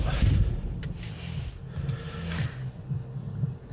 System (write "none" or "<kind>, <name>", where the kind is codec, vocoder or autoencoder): none